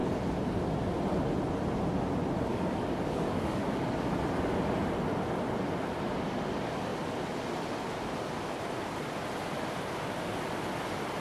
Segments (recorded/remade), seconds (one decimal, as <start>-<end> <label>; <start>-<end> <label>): 0.0-2.5 recorded; 2.5-3.9 remade; 3.9-11.2 recorded

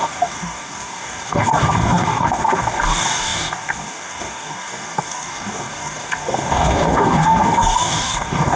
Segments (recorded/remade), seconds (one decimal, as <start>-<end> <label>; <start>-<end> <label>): 0.0-8.6 remade